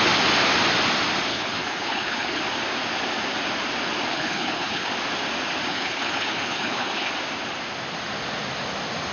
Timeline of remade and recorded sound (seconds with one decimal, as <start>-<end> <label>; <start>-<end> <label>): 0.0-1.3 recorded; 1.3-2.4 remade; 2.4-4.1 recorded; 4.1-4.9 remade; 4.9-5.7 recorded; 5.7-7.1 remade; 7.1-9.1 recorded

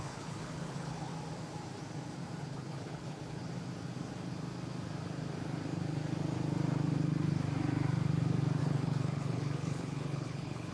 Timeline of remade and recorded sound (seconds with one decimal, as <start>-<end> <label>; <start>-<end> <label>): 0.0-1.1 remade; 1.1-2.4 recorded; 2.4-3.4 remade; 3.4-8.6 recorded; 8.6-10.7 remade

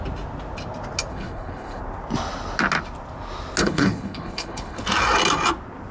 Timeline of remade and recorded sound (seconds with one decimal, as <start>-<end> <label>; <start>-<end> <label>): 0.0-1.1 recorded; 1.1-1.8 remade; 1.8-3.6 recorded; 3.6-4.8 remade; 4.8-5.9 recorded

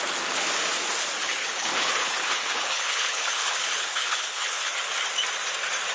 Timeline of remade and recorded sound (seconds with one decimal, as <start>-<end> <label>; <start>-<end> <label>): 0.0-1.2 recorded; 1.2-4.7 remade; 4.7-5.9 recorded

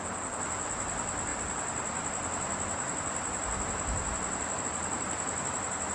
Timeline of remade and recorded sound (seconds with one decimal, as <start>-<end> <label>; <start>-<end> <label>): 0.0-5.9 recorded

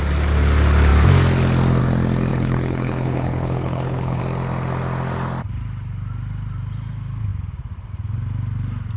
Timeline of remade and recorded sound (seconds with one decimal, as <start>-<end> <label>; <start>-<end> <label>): 0.0-2.3 recorded; 2.3-4.2 remade; 4.2-9.0 recorded

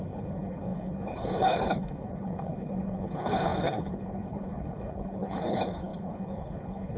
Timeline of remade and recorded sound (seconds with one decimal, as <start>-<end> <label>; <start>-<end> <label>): 0.0-7.0 remade